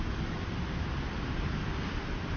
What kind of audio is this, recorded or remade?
recorded